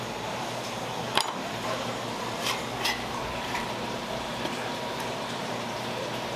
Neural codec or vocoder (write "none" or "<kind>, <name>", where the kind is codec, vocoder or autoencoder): vocoder, BigVGAN v2